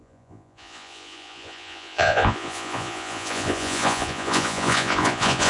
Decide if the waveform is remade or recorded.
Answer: remade